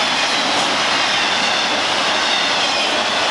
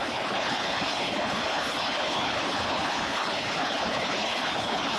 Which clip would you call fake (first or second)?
second